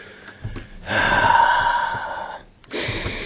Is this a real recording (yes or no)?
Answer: yes